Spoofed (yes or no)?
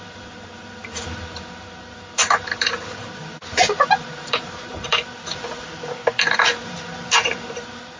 yes